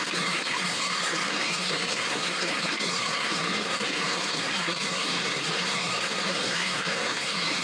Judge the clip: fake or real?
fake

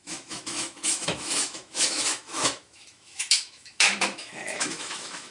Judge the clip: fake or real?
fake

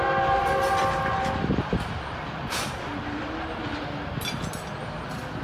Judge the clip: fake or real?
real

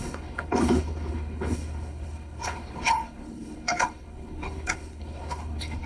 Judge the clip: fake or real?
fake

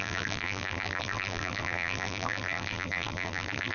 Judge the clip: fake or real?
fake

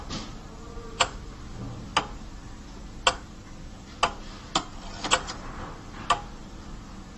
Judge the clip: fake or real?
real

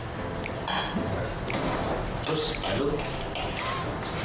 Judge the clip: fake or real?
real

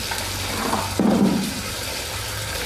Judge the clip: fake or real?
real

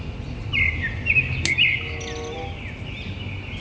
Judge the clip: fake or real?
real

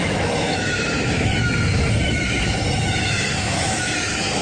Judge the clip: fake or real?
fake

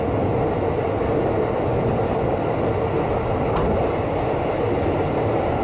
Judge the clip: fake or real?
real